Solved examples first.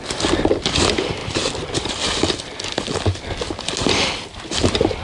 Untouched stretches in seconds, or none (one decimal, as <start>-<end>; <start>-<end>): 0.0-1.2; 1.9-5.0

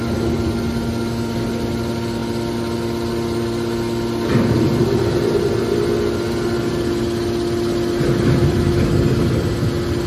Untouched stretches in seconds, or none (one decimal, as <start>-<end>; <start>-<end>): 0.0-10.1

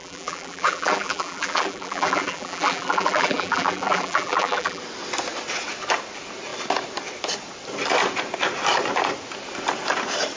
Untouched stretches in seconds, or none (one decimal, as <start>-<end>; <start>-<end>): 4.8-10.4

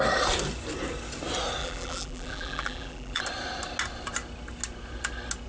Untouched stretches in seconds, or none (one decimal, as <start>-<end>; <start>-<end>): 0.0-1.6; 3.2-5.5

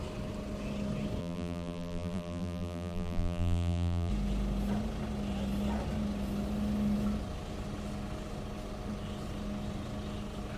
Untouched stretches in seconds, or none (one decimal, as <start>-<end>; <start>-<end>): 0.0-1.2; 4.1-10.6